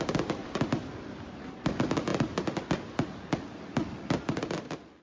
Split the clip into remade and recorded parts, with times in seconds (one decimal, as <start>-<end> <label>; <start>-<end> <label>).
0.0-5.0 recorded